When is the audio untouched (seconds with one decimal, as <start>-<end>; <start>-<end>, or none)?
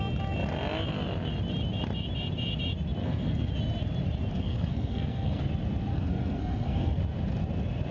0.0-3.0; 3.5-4.3; 5.4-5.9; 7.0-7.9